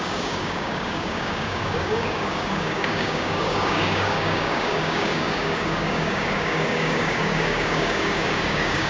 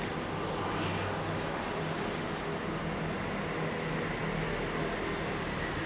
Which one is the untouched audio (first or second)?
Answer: second